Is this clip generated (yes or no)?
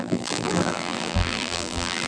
yes